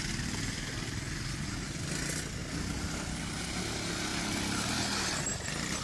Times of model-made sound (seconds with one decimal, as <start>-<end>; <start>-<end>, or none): none